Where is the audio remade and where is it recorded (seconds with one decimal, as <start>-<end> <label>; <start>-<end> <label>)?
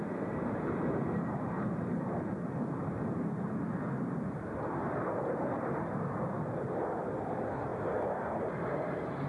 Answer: 0.0-9.3 recorded